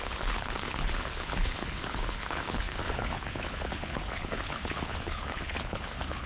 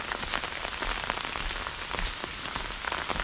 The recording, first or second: second